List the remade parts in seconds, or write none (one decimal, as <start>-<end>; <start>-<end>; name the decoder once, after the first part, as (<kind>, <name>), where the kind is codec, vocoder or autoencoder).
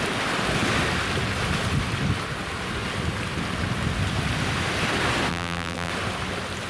5.3-5.9 (vocoder, BigVGAN v2)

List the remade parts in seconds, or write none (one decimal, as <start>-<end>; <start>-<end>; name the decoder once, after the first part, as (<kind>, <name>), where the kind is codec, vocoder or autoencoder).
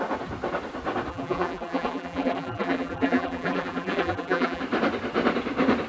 1.1-4.6 (vocoder, BigVGAN v2)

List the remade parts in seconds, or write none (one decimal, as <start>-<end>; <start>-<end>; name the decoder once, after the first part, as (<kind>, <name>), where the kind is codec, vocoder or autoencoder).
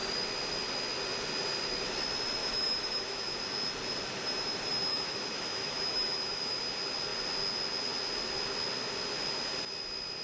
2.4-3.4 (autoencoder, DAC-VAE); 4.9-6.6